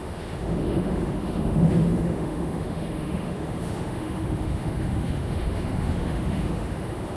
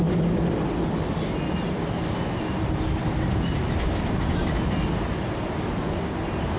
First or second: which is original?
second